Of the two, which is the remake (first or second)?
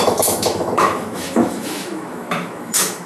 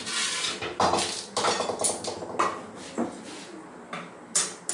first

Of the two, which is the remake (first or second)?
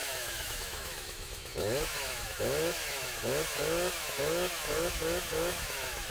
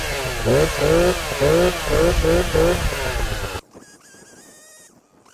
first